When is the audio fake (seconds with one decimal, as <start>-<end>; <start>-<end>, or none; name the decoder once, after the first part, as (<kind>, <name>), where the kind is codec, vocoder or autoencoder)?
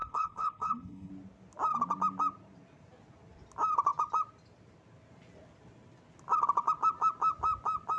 0.0-1.1 (codec, HILCodec)